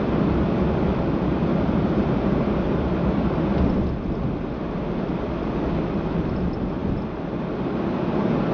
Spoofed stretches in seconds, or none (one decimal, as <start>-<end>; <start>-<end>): 1.5-2.5